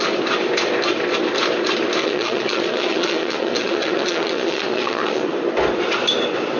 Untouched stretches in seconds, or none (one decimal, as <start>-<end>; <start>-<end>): 0.0-2.0; 5.3-6.6